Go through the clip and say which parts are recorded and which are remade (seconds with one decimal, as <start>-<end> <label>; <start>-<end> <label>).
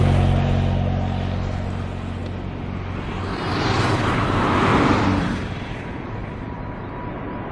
0.0-4.7 recorded; 4.7-6.6 remade; 6.6-7.5 recorded